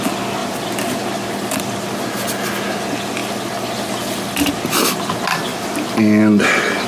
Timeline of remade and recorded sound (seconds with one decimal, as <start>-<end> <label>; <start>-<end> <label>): 0.0-6.9 recorded